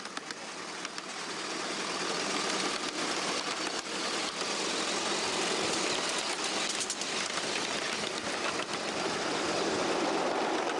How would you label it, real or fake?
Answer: real